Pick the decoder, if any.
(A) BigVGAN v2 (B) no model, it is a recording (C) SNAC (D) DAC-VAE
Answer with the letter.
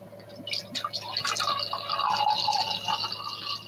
B